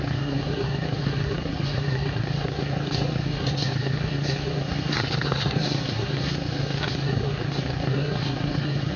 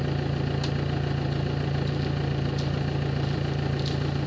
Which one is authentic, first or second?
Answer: second